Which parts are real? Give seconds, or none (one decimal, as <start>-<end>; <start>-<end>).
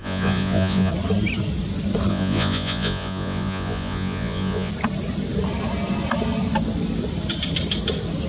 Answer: 0.9-2.1; 4.7-8.3